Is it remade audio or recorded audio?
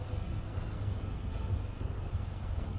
remade